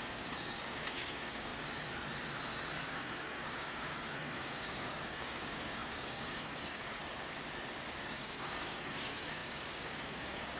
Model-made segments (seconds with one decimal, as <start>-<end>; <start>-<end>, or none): 0.0-1.5; 2.9-7.0; 8.0-10.6